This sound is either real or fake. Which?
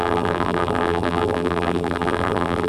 fake